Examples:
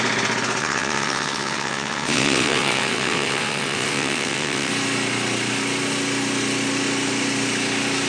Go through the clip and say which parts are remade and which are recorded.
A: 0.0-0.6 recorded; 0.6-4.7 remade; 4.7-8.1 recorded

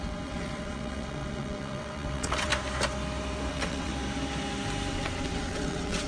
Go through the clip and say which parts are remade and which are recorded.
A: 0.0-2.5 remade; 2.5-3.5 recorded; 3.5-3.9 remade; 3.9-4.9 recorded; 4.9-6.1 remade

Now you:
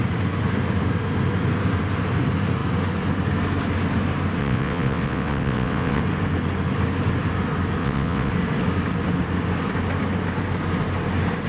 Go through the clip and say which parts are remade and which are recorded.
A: 0.0-4.4 recorded; 4.4-6.0 remade; 6.0-7.8 recorded; 7.8-8.3 remade; 8.3-11.5 recorded